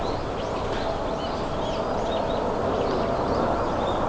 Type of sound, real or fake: real